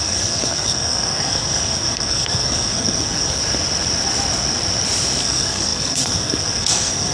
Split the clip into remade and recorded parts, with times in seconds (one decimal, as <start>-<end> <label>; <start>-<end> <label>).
0.0-3.4 remade; 3.4-5.2 recorded; 5.2-7.1 remade